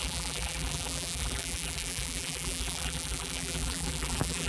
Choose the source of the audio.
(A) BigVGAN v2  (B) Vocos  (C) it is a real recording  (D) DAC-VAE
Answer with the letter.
A